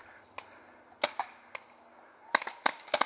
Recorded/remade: recorded